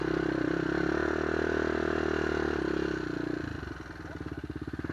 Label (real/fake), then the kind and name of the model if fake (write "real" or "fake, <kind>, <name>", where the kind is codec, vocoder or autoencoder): real